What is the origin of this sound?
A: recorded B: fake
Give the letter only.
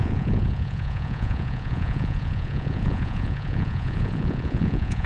B